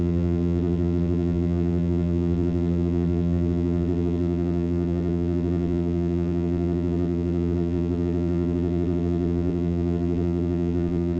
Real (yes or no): no